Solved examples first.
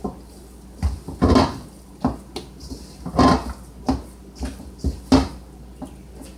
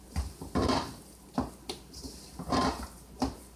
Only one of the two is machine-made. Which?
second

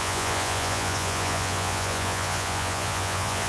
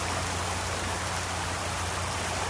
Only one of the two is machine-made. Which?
first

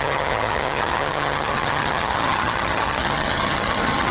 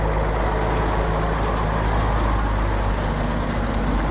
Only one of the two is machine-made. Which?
first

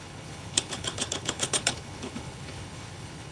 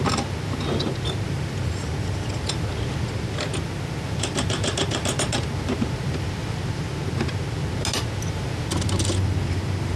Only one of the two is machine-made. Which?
first